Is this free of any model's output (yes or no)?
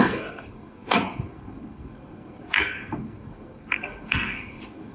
no